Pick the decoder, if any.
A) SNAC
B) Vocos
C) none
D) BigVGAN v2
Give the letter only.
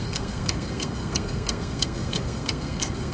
A